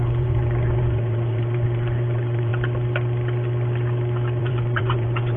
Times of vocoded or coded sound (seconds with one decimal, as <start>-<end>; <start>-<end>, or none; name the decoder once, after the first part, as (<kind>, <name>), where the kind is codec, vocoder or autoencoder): 0.0-2.5 (vocoder, Vocos); 4.4-5.4